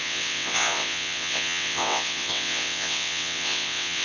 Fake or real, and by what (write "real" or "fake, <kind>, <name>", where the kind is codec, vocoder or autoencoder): fake, vocoder, WaveNeXt